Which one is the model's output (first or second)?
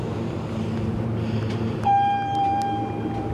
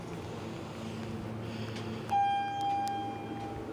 first